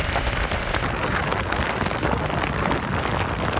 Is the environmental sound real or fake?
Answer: real